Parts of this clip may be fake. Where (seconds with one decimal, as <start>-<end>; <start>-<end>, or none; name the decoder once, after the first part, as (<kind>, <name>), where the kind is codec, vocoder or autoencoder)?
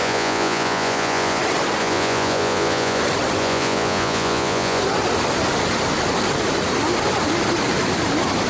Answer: 0.0-1.4 (vocoder, Vocos); 1.8-3.0; 3.4-4.8